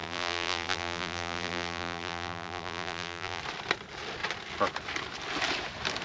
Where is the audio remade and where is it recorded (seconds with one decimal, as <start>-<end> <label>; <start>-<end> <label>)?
0.0-3.4 remade; 3.4-6.0 recorded